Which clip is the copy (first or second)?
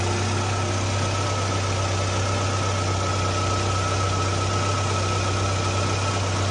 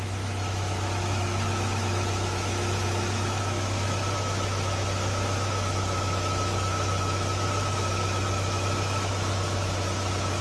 second